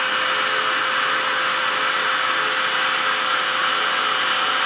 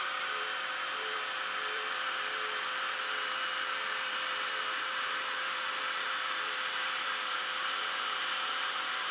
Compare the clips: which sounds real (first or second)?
first